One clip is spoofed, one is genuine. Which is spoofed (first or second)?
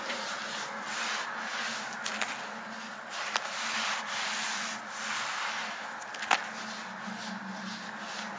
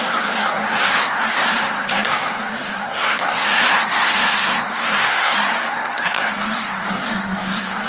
second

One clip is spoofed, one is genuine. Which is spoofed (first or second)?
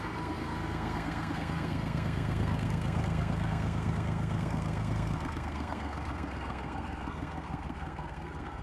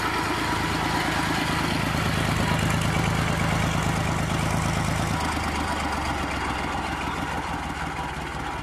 first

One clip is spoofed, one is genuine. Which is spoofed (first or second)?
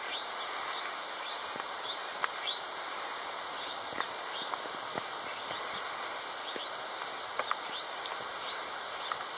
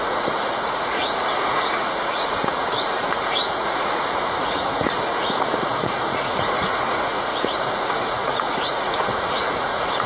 second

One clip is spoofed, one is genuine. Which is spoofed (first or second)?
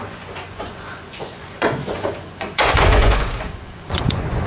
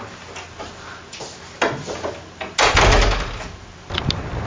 first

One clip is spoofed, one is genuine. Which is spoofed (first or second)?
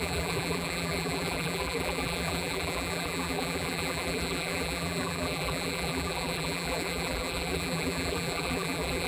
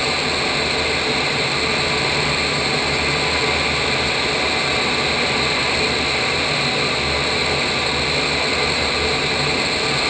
first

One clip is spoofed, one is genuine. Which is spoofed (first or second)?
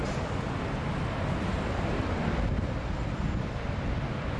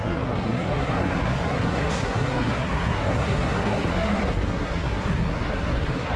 second